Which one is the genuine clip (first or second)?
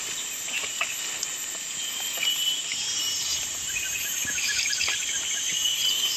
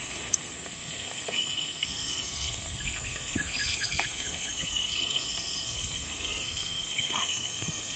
first